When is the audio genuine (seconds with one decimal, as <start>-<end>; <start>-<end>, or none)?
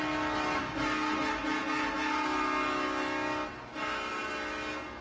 0.0-5.0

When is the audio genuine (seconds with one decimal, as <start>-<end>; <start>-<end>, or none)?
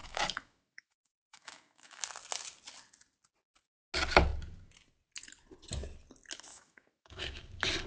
2.0-6.5; 7.4-7.9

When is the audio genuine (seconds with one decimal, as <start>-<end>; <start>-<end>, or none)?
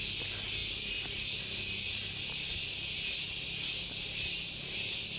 0.0-5.2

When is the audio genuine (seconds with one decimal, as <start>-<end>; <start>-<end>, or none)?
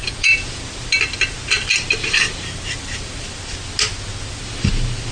0.6-5.1